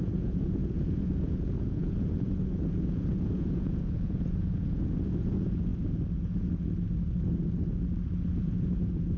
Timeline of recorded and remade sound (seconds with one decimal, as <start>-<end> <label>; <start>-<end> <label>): 0.0-5.7 remade; 5.7-8.4 recorded; 8.4-9.2 remade